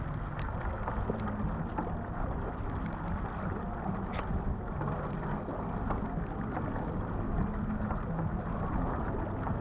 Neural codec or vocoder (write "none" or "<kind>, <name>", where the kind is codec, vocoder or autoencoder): none